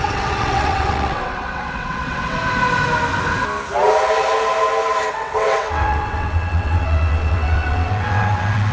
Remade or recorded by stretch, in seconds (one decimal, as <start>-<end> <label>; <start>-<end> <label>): 0.0-2.4 remade; 2.4-5.1 recorded; 5.1-8.7 remade